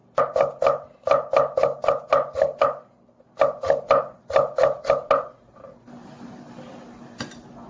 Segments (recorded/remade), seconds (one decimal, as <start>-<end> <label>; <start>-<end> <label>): 0.0-7.7 recorded